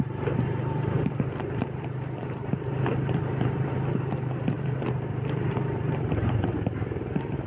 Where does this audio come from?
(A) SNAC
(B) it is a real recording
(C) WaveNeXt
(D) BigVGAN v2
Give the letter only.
D